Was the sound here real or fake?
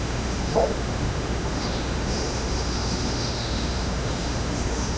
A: fake